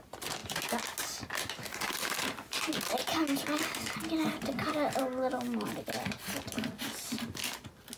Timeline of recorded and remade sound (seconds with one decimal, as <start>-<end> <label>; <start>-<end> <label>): 0.0-8.0 recorded